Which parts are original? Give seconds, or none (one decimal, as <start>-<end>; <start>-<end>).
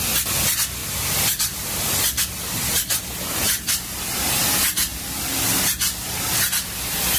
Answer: 0.0-0.8; 3.0-7.2